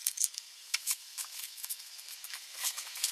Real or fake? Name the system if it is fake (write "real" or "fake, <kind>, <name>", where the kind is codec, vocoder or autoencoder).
fake, codec, SNAC